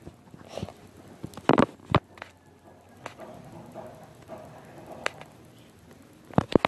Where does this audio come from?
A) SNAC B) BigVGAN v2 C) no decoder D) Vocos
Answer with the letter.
C